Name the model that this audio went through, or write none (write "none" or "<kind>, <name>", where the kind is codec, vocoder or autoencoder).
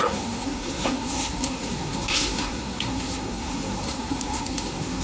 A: codec, SNAC